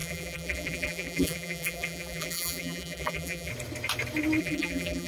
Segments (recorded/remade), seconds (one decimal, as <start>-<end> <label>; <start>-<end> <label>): 0.0-3.5 remade; 3.5-4.4 recorded; 4.4-5.1 remade